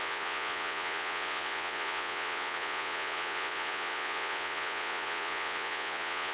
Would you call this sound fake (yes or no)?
yes